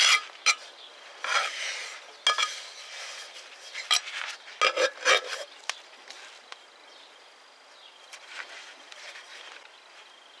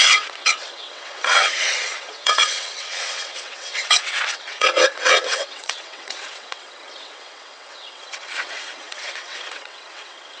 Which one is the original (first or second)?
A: first